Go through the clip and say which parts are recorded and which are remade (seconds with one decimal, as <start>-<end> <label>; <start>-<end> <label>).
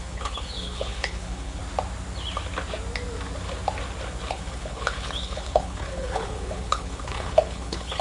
0.0-1.6 remade; 1.6-4.3 recorded; 4.3-8.0 remade